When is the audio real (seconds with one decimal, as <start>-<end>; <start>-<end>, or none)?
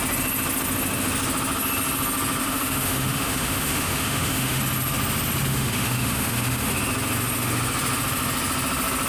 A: 0.0-2.4; 4.6-5.5; 6.7-9.1